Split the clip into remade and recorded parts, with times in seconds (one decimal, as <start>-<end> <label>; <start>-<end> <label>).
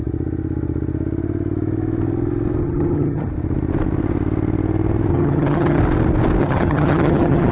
0.0-2.6 recorded; 2.6-3.3 remade; 3.3-5.1 recorded; 5.1-5.8 remade; 5.8-6.4 recorded; 6.4-7.5 remade